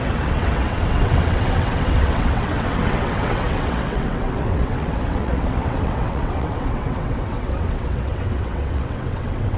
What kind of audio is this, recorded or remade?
remade